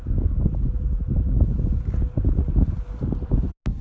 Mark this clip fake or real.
real